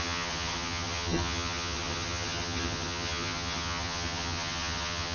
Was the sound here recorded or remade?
remade